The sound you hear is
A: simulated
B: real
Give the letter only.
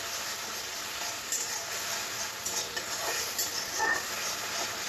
B